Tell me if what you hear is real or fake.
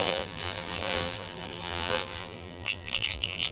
fake